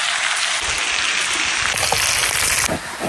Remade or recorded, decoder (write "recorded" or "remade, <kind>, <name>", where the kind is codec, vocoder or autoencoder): recorded